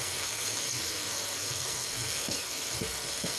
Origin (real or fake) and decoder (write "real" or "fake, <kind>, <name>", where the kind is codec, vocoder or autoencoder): fake, codec, SNAC